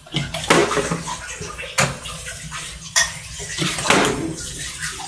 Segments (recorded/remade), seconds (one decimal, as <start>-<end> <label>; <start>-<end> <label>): 0.0-5.1 recorded